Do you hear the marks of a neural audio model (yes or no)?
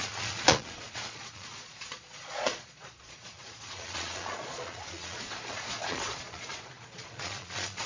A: yes